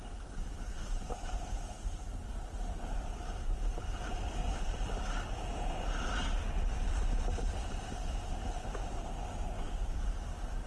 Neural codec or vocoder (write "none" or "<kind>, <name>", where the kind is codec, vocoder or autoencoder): vocoder, BigVGAN v2